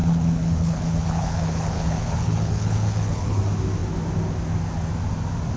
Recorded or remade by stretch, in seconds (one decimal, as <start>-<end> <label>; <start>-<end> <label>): 0.0-3.4 remade; 3.4-5.6 recorded